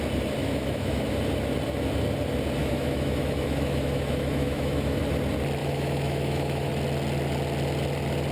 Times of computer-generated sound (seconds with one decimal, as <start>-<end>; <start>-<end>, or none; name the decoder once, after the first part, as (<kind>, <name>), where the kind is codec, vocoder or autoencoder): 0.4-1.1 (autoencoder, DAC-VAE); 2.6-5.0; 5.6-6.7